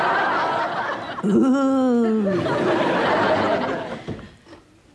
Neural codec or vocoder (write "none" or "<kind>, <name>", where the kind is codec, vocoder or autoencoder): none